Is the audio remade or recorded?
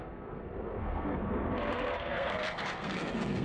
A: remade